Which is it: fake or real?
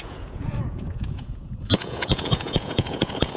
fake